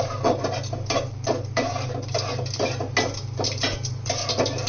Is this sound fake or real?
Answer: real